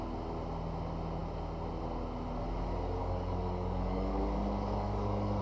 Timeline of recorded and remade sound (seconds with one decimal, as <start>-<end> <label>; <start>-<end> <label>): 0.0-3.0 recorded; 3.0-5.4 remade